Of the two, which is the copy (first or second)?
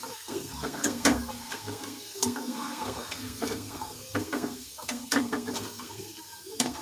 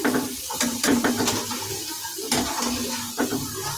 first